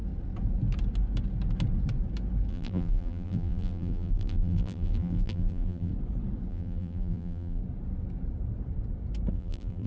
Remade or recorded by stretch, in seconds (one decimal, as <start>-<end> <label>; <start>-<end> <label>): 0.0-2.5 recorded; 2.5-5.9 remade; 5.9-6.5 recorded; 6.5-7.6 remade; 7.6-9.3 recorded; 9.3-9.9 remade